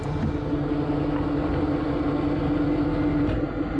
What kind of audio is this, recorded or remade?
recorded